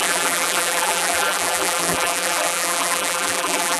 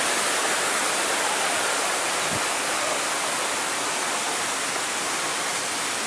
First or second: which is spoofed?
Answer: first